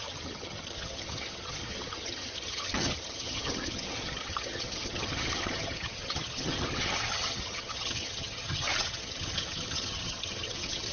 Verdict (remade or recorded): remade